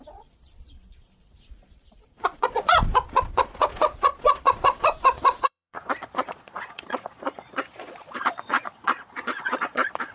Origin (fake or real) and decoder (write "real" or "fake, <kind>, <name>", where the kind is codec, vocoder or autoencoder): fake, vocoder, Vocos